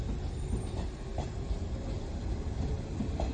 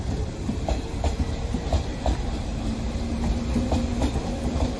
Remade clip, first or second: second